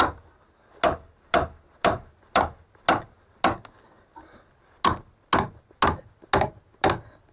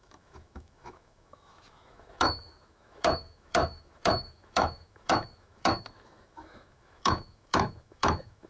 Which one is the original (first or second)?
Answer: first